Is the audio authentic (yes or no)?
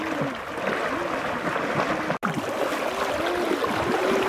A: yes